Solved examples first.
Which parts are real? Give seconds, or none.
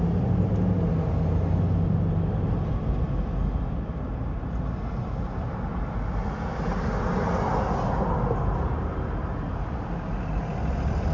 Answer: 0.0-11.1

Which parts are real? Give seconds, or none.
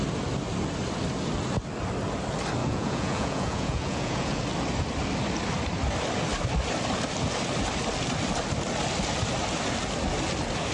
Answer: 0.0-2.6; 4.4-10.7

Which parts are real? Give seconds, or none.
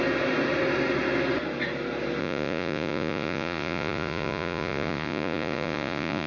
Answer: 0.0-2.2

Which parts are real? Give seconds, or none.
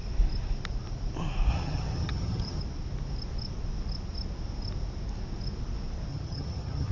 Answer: 0.0-1.5; 2.6-6.1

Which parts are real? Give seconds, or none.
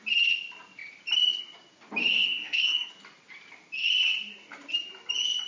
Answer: 0.0-2.1; 2.9-5.5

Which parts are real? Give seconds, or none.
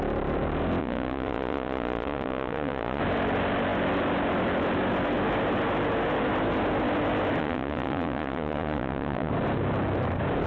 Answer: 0.0-0.8; 3.0-7.4; 9.3-10.5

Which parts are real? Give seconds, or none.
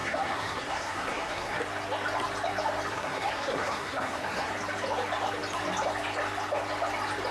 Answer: 1.6-2.9; 4.5-7.3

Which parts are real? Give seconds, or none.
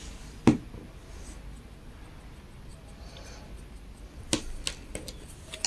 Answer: 0.0-5.7